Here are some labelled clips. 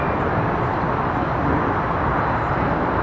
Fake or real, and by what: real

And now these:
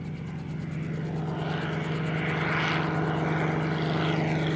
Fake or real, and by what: real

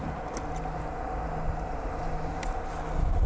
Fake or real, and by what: real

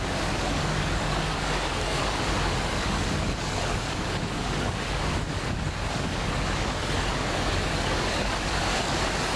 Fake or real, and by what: fake, codec, DAC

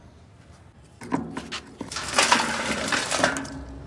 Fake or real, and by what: real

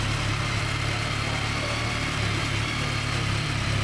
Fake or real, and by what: fake, vocoder, BigVGAN v2